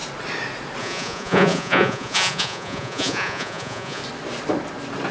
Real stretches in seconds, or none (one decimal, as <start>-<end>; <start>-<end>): 0.0-0.8; 4.0-5.1